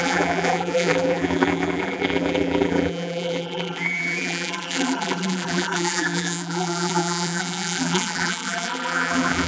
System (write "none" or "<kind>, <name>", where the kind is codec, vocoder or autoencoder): vocoder, BigVGAN v2